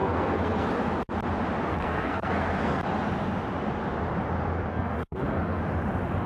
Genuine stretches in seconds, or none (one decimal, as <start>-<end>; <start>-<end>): 0.7-1.7; 2.8-4.7; 5.6-6.3